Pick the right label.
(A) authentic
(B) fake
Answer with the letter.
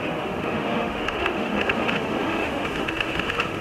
B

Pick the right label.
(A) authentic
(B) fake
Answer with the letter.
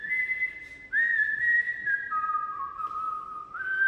A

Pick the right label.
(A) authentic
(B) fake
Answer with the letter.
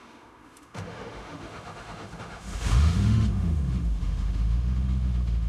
B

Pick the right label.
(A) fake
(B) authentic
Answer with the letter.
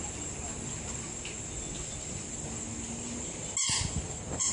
B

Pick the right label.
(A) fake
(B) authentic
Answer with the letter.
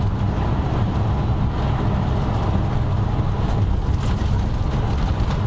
B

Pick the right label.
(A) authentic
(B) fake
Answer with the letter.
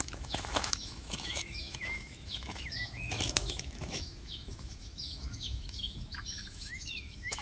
B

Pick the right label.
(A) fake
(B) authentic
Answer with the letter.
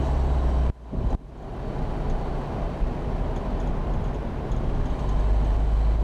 B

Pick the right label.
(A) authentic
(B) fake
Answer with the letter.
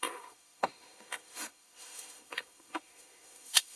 B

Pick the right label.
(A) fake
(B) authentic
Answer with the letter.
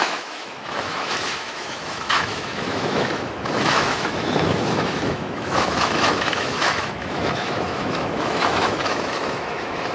A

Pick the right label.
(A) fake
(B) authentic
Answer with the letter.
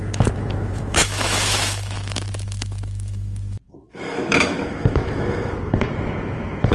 A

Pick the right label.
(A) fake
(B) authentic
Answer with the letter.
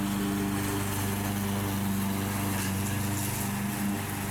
B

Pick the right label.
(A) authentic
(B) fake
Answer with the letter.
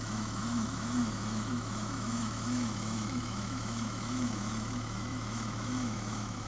B